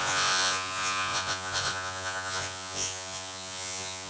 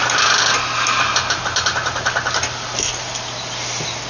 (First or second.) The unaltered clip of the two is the second